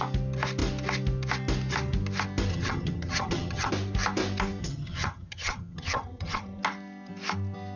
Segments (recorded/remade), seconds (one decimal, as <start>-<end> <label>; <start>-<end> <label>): 0.0-2.5 recorded; 2.5-3.7 remade; 3.7-4.6 recorded; 4.6-6.6 remade; 6.6-7.8 recorded

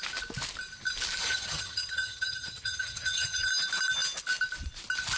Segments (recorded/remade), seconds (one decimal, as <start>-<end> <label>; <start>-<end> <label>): 0.0-1.2 recorded; 1.2-3.5 remade; 3.5-5.2 recorded